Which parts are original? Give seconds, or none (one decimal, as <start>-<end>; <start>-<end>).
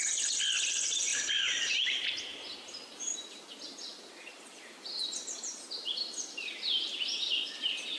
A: 0.0-1.1; 1.7-2.3; 7.1-8.0